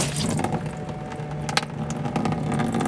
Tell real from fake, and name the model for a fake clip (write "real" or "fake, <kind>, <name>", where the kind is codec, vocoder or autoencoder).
real